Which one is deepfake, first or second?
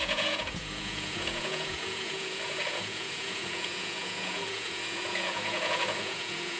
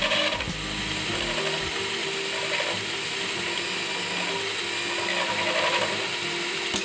first